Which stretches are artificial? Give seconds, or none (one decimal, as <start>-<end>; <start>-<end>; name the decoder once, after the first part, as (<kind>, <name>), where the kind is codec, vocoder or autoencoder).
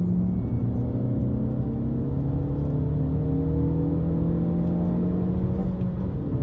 none